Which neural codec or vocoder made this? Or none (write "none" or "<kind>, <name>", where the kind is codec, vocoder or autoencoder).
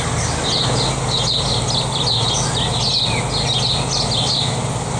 none